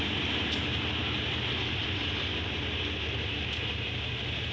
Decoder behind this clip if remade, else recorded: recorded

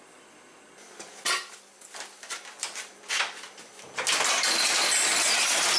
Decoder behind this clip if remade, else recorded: recorded